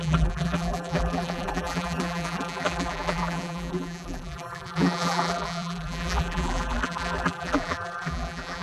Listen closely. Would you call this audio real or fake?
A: fake